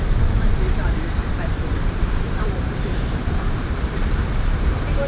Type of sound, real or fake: fake